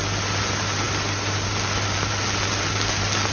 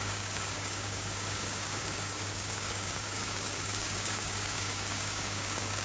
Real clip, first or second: first